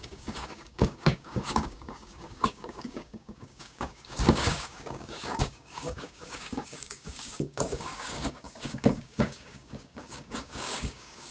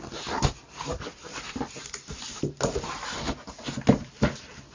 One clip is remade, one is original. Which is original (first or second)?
second